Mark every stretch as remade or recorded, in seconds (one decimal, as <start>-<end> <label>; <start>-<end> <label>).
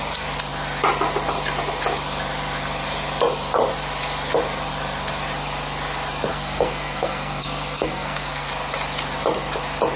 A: 0.0-6.3 recorded; 6.3-8.5 remade; 8.5-10.0 recorded